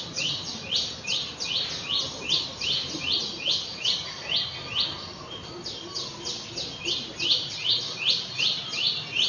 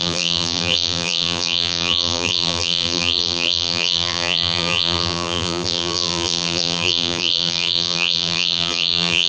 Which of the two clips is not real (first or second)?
second